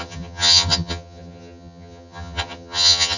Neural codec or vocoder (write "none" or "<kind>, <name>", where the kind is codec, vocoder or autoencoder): vocoder, HiFi-GAN